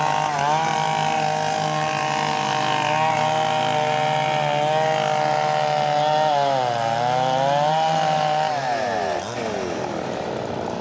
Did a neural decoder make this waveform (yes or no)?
no